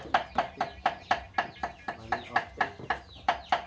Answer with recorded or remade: recorded